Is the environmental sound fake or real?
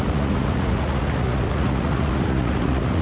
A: fake